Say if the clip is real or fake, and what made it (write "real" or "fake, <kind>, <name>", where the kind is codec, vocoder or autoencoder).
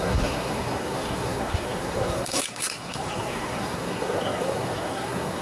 fake, codec, SNAC